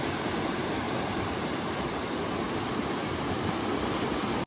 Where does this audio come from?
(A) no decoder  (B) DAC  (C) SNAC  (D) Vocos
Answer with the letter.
A